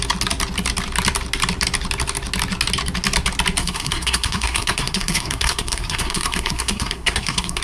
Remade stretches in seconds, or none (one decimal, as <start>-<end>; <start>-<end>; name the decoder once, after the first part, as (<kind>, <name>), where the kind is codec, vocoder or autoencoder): 3.6-7.6 (codec, SNAC)

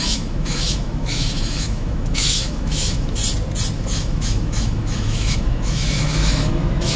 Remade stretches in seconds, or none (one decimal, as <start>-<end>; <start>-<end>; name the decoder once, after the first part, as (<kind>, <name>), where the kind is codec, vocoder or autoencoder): 0.0-3.2 (autoencoder, DAC-VAE); 3.7-7.0